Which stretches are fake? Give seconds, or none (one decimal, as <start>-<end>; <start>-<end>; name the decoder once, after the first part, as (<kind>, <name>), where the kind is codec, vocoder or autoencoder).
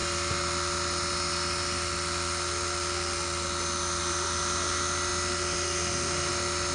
none